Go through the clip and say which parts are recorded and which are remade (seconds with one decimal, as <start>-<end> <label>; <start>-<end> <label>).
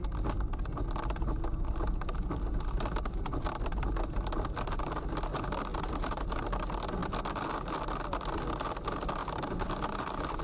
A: 0.0-5.7 recorded; 5.7-6.2 remade; 6.2-9.2 recorded; 9.2-10.4 remade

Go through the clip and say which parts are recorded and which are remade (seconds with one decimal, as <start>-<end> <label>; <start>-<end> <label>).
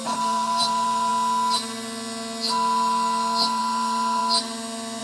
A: 0.0-1.1 remade; 1.1-3.6 recorded; 3.6-4.2 remade; 4.2-5.0 recorded